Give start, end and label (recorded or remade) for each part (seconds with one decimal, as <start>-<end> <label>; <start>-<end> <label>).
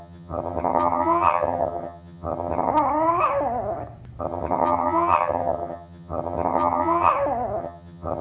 0.0-2.7 remade; 2.7-4.2 recorded; 4.2-7.1 remade; 7.1-7.6 recorded; 7.6-8.2 remade